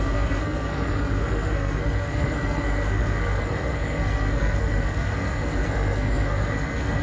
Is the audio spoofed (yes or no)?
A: yes